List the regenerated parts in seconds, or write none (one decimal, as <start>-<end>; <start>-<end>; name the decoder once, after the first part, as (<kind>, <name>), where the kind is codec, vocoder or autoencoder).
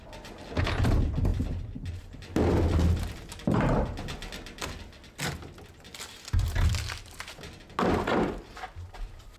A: none